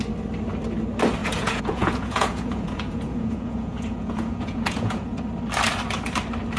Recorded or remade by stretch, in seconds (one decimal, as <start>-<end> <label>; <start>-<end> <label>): 0.0-1.2 recorded; 1.2-5.2 remade; 5.2-6.6 recorded